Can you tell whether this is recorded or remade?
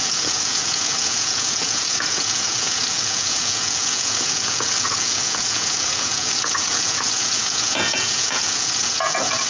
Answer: remade